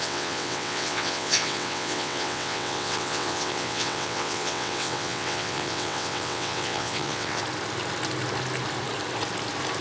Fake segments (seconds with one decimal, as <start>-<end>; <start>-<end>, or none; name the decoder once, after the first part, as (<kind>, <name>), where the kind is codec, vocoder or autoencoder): 0.0-7.4 (vocoder, WaveNeXt)